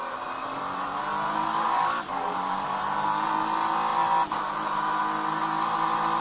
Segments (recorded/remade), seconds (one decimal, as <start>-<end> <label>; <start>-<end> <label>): 0.0-1.4 recorded; 1.4-2.8 remade; 2.8-6.2 recorded